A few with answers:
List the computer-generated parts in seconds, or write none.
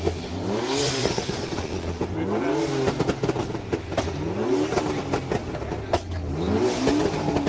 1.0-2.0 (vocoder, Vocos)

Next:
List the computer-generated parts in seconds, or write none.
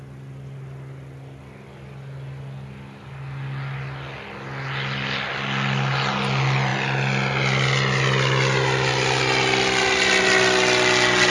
none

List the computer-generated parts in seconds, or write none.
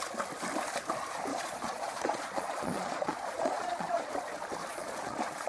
1.3-4.1 (vocoder, Vocos); 4.6-5.5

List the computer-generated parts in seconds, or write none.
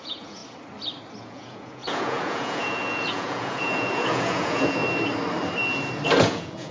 0.0-0.4 (vocoder, Vocos); 1.2-4.8; 6.2-6.7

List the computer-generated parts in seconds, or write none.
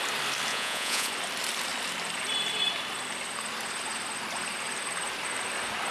0.5-1.1 (vocoder, Vocos)